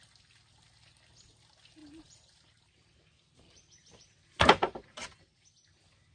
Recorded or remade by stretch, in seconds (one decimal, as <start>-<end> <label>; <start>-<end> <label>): 0.0-1.8 recorded; 1.8-5.5 remade; 5.5-6.1 recorded